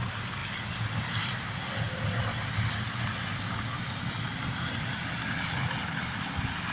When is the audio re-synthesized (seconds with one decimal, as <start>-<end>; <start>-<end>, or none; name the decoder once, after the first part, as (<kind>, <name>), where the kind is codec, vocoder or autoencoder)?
none